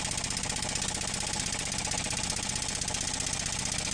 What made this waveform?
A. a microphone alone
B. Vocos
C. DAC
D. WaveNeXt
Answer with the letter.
A